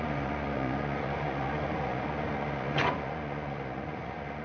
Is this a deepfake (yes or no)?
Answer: yes